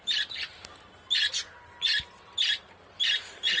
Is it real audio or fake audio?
real